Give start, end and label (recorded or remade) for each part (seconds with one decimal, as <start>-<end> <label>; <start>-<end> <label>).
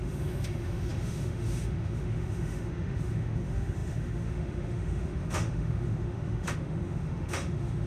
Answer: 0.0-7.9 remade